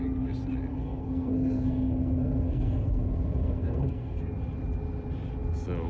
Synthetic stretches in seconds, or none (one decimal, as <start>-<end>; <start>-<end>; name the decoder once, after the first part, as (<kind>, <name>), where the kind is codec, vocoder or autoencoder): 0.7-4.2 (codec, SNAC)

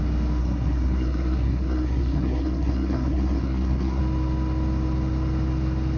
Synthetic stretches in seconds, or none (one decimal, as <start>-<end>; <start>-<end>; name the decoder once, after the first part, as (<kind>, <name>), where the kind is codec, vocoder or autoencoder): 0.4-4.0 (codec, SNAC)

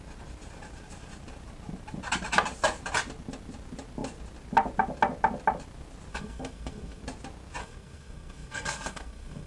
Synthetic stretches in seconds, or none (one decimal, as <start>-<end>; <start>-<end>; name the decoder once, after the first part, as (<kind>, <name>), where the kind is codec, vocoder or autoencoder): 6.1-7.0 (codec, SNAC); 7.6-9.5

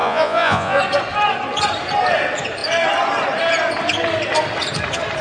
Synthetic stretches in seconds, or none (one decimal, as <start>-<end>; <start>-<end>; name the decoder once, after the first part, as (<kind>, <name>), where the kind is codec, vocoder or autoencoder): 0.0-0.8 (vocoder, Vocos)

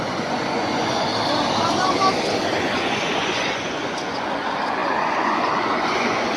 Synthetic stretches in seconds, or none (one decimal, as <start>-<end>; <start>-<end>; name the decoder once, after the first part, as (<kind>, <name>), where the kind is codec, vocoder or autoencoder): 0.0-1.1 (vocoder, Vocos); 2.6-6.4

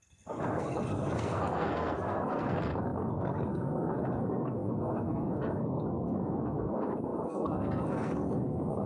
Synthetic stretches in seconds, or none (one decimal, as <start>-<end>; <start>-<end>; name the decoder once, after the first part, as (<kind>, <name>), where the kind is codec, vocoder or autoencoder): 0.0-8.9 (codec, SNAC)

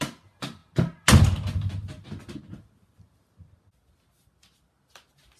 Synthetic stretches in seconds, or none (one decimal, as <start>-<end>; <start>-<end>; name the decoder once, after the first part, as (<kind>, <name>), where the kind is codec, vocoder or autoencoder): none